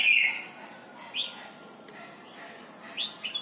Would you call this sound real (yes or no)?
yes